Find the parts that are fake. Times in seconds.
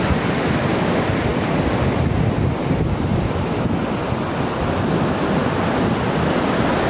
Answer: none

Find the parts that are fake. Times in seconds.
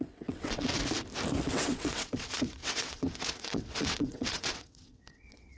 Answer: 0.0-0.7; 1.4-5.6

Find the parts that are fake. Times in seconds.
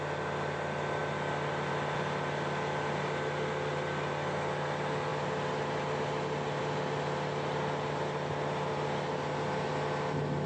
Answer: none